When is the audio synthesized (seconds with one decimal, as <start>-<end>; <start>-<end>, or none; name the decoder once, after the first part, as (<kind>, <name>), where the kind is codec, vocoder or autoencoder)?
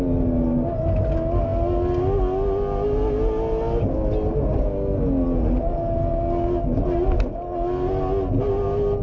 none